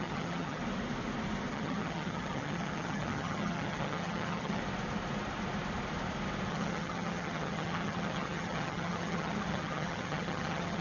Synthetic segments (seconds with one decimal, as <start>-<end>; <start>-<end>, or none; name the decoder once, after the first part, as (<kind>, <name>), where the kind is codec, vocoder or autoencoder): 0.0-0.6 (vocoder, HiFi-GAN); 1.5-4.6; 6.5-10.8